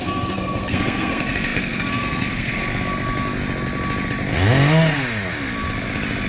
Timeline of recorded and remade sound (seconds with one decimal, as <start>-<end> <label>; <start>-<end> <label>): 0.0-2.6 remade; 2.6-6.3 recorded